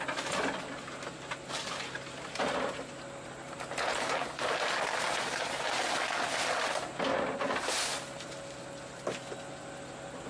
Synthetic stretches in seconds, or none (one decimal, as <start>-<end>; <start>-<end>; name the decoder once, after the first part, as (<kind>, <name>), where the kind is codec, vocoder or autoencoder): none